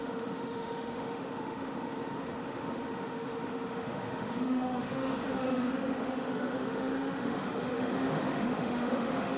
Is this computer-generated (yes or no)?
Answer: yes